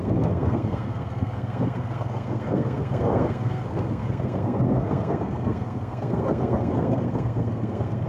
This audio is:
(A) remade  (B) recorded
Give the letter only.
A